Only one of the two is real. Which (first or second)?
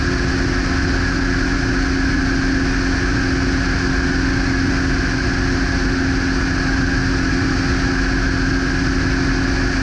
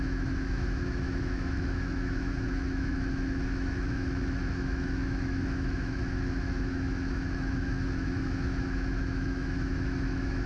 first